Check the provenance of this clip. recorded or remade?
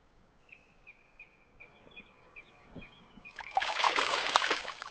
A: remade